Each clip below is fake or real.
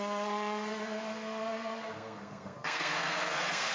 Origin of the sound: fake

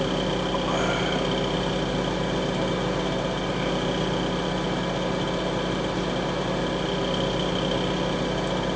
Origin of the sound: real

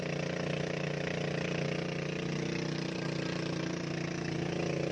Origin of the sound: real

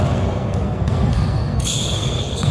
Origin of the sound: fake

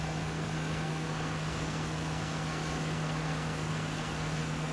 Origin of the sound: fake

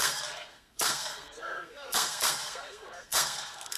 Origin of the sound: fake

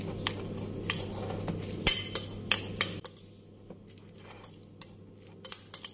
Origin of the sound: real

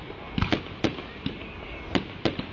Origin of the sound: real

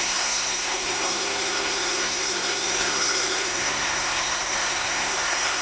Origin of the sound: fake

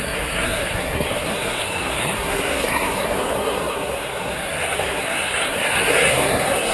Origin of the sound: fake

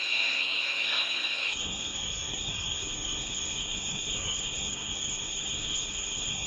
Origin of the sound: fake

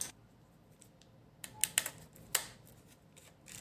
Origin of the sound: real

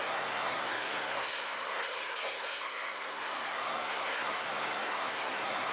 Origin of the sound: fake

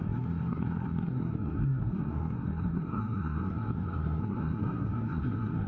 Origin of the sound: fake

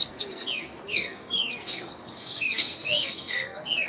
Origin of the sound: fake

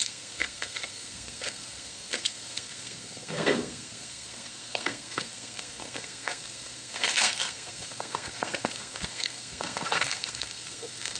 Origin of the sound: fake